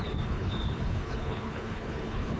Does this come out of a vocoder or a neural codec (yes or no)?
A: yes